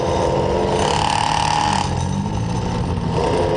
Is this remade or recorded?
recorded